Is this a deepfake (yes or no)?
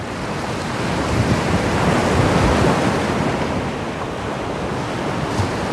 no